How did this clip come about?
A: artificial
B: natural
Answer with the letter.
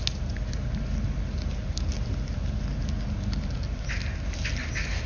B